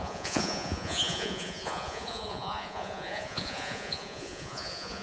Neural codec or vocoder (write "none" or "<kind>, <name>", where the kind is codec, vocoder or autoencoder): vocoder, Vocos